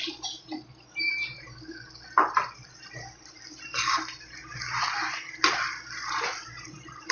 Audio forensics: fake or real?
fake